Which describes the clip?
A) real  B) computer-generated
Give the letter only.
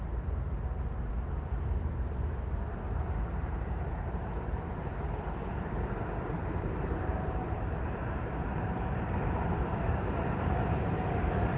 B